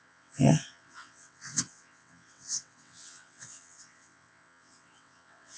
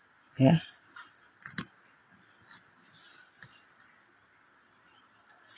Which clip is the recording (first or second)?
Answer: second